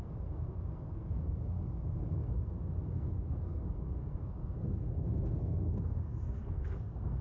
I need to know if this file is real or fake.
fake